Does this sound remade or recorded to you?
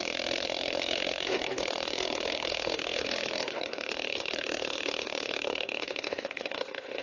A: remade